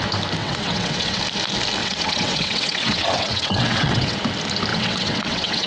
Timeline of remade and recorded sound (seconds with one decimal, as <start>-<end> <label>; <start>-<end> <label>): 0.0-0.4 recorded; 0.4-1.2 remade; 1.2-1.8 recorded; 1.8-4.2 remade; 4.2-4.7 recorded; 4.7-5.7 remade